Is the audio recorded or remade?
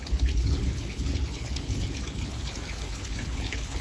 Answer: remade